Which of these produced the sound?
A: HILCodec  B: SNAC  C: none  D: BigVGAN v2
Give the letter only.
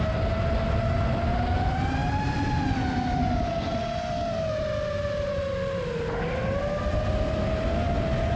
C